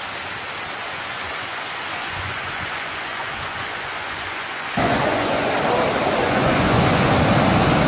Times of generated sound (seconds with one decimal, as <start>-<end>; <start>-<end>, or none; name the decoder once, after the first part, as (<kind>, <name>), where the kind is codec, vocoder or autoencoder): 0.8-5.5 (vocoder, Vocos); 6.2-7.1